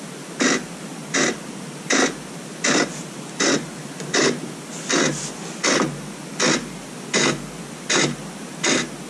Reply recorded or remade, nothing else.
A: recorded